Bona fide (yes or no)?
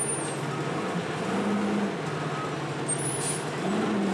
yes